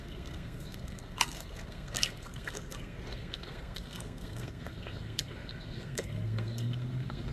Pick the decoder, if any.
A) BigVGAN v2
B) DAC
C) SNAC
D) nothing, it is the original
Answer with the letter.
C